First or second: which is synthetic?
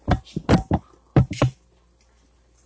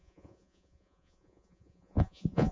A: second